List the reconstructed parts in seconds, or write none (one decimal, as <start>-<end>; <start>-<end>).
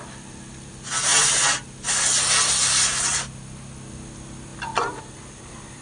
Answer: 0.0-1.1; 3.9-5.8